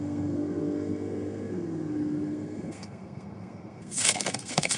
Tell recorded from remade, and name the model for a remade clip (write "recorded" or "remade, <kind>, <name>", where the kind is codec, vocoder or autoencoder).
remade, codec, SNAC